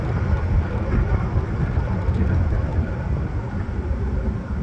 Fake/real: real